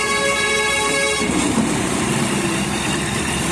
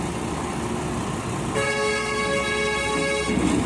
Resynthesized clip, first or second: first